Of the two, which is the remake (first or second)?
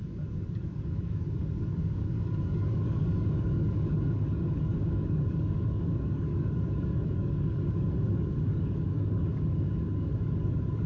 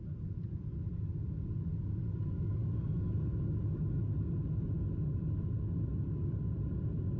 first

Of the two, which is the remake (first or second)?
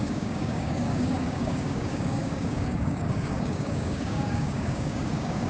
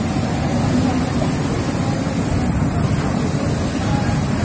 first